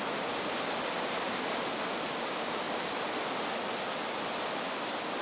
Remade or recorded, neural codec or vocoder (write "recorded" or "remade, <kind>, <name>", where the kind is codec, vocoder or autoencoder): recorded